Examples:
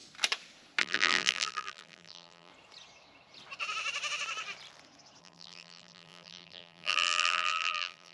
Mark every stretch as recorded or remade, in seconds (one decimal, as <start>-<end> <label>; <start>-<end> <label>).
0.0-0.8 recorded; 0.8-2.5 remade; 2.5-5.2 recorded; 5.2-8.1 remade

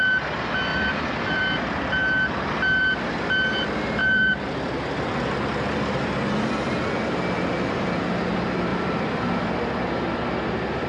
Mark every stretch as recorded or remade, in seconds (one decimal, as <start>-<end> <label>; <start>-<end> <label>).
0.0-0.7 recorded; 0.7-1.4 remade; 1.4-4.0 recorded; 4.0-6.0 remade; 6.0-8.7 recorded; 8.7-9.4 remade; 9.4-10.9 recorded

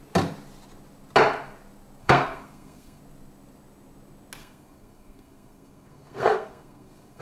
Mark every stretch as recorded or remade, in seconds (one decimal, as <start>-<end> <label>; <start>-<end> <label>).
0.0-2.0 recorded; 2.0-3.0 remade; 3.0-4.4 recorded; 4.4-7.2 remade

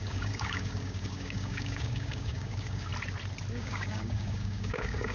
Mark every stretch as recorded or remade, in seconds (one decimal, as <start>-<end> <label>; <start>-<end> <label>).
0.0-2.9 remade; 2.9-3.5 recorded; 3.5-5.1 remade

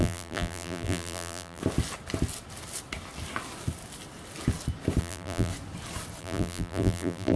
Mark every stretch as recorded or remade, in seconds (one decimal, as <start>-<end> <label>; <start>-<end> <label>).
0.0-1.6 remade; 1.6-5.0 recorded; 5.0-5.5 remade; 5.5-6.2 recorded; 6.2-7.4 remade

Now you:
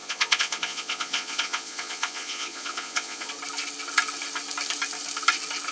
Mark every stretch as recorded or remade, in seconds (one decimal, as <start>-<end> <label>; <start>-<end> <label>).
0.0-3.3 remade; 3.3-5.7 recorded